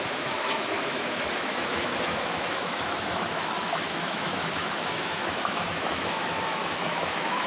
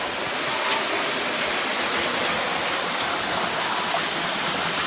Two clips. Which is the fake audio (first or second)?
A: first